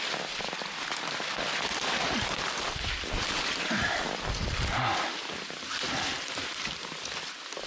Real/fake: real